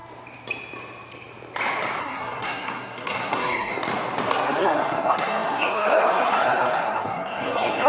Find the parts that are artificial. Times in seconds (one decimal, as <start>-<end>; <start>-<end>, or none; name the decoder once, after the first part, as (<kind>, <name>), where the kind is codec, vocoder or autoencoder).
2.0-3.7 (codec, SNAC); 4.3-7.9